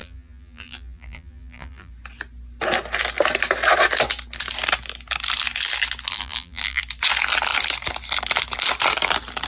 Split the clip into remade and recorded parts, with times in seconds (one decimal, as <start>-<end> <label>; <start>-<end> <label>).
0.0-1.9 remade; 1.9-6.1 recorded; 6.1-6.8 remade; 6.8-9.5 recorded

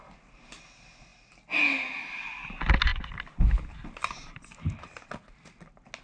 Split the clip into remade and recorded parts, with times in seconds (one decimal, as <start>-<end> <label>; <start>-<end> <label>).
0.0-6.0 recorded

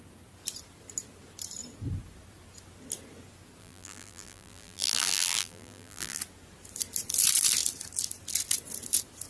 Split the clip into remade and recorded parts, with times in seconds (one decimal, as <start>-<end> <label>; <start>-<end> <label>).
0.0-3.6 recorded; 3.6-6.2 remade; 6.2-9.3 recorded

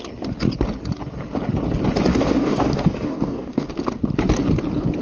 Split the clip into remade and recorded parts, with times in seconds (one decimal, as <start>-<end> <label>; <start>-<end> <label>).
0.0-2.1 recorded; 2.1-3.7 remade; 3.7-5.0 recorded

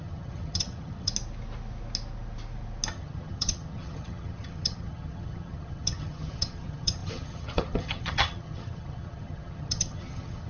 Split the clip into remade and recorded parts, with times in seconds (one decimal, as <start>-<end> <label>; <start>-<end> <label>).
0.0-1.1 remade; 1.1-2.9 recorded; 2.9-10.5 remade

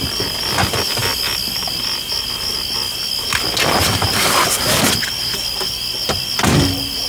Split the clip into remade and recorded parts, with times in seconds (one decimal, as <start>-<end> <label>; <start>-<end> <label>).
0.0-1.0 remade; 1.0-5.3 recorded; 5.3-7.1 remade